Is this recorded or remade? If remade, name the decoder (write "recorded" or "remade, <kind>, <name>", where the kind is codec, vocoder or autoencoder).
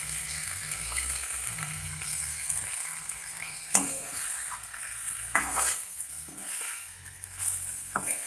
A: remade, codec, SNAC